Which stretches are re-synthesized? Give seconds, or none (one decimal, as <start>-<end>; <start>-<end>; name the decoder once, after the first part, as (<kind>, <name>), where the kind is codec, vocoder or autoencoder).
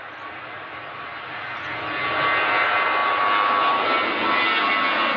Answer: none